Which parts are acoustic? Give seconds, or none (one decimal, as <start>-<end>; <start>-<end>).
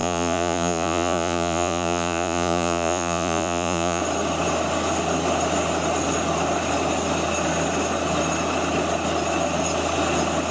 4.0-10.5